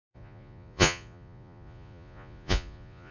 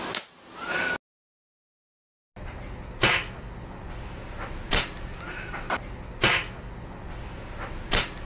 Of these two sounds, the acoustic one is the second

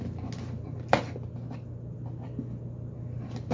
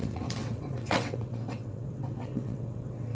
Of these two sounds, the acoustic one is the first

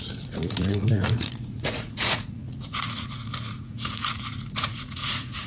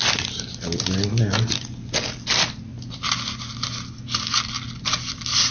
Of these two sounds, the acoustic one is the second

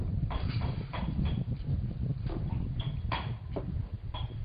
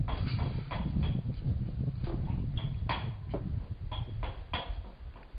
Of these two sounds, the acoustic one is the second